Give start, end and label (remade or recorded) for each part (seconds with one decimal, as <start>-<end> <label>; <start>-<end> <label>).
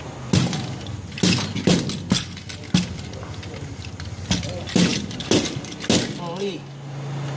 0.0-7.4 recorded